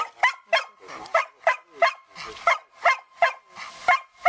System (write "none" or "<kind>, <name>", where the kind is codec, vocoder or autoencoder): none